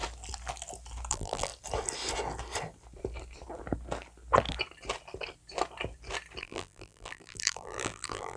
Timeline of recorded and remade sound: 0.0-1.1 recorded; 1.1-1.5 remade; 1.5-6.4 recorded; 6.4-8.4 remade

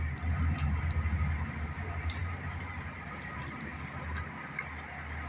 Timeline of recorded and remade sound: 0.0-5.3 recorded

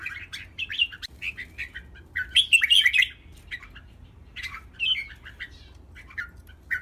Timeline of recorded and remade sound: 0.0-6.8 recorded

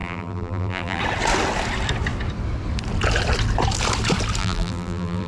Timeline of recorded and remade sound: 0.0-1.0 remade; 1.0-4.4 recorded; 4.4-5.3 remade

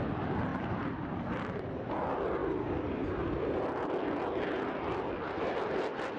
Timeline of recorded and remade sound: 0.0-0.5 recorded; 0.5-1.9 remade; 1.9-6.2 recorded

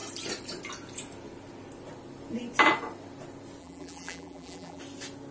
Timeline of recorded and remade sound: 0.0-3.6 recorded; 3.6-4.8 remade; 4.8-5.3 recorded

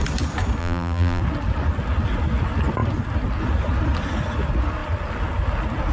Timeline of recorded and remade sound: 0.0-0.6 recorded; 0.6-1.2 remade; 1.2-5.9 recorded

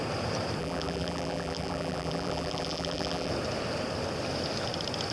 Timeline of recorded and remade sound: 0.0-0.6 recorded; 0.6-3.3 remade; 3.3-5.1 recorded